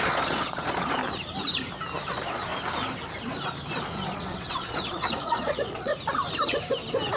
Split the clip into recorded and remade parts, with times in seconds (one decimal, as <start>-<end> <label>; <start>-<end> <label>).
0.0-1.0 remade; 1.0-2.1 recorded; 2.1-2.5 remade; 2.5-3.7 recorded; 3.7-5.9 remade; 5.9-7.2 recorded